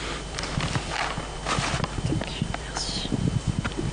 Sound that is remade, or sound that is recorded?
remade